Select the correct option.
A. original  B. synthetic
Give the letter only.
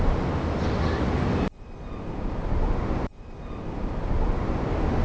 A